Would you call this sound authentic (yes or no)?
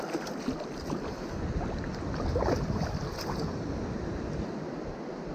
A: yes